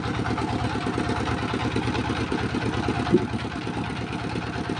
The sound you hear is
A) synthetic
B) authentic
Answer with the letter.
B